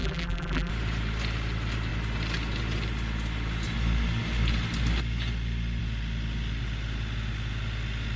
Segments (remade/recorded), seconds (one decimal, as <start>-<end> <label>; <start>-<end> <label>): 0.0-0.7 remade; 0.7-8.2 recorded